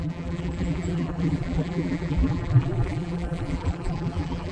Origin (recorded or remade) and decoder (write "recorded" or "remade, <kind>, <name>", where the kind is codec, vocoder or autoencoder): remade, vocoder, BigVGAN v2